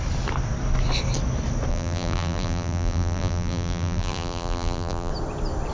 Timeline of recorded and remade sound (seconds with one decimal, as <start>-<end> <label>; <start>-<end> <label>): 0.0-1.7 recorded; 1.7-5.1 remade; 5.1-5.7 recorded